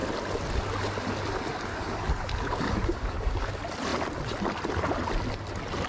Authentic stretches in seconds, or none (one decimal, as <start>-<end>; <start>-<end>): 0.0-1.7; 3.5-5.9